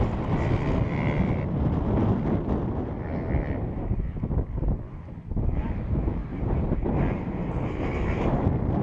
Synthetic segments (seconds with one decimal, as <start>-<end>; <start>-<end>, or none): 6.2-6.9